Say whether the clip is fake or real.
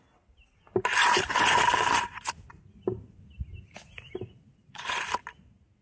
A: real